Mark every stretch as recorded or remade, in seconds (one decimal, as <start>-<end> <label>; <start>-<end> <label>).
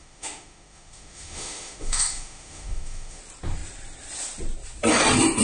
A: 0.0-3.2 remade; 3.2-5.4 recorded